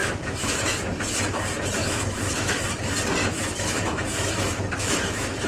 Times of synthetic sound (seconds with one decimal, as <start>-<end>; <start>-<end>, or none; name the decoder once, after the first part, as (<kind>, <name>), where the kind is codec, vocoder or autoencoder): 0.0-0.8 (autoencoder, DAC-VAE); 1.8-2.5; 3.2-5.5